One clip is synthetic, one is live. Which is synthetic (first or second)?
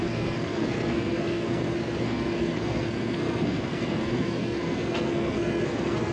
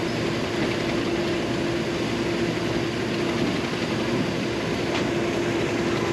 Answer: first